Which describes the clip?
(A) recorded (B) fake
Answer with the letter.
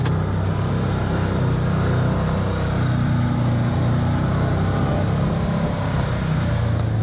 A